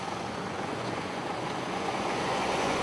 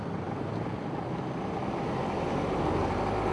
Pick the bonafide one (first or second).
second